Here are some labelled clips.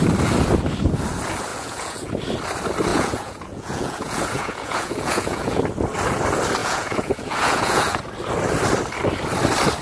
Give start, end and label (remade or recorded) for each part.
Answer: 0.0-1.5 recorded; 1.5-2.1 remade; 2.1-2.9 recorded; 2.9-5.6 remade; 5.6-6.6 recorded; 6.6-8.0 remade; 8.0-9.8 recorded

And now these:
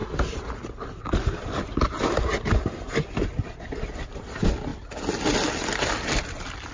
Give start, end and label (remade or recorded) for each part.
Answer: 0.0-2.5 recorded; 2.5-6.7 remade

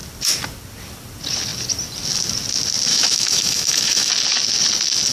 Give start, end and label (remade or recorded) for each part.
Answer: 0.0-2.9 recorded; 2.9-4.1 remade; 4.1-5.1 recorded

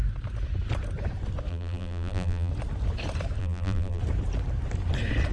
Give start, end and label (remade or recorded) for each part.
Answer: 0.0-1.5 recorded; 1.5-2.5 remade; 2.5-3.4 recorded; 3.4-4.0 remade; 4.0-5.3 recorded

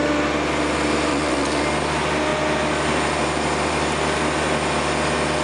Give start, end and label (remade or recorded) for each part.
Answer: 0.0-1.1 recorded; 1.1-1.6 remade; 1.6-5.4 recorded

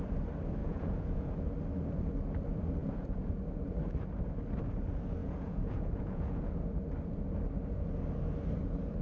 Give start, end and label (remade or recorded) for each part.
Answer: 0.0-0.6 recorded; 0.6-1.3 remade; 1.3-2.8 recorded; 2.8-3.3 remade; 3.3-5.2 recorded; 5.2-6.5 remade; 6.5-9.0 recorded

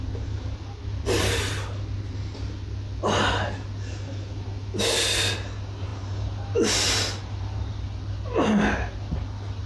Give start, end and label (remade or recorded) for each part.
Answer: 0.0-5.9 recorded; 5.9-7.7 remade; 7.7-9.7 recorded

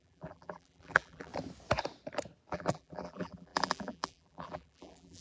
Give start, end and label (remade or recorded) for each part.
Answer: 0.0-1.3 remade; 1.3-2.5 recorded; 2.5-5.2 remade